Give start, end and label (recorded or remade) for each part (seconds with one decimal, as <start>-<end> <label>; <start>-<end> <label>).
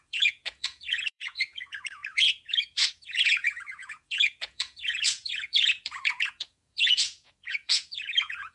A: 0.0-8.5 remade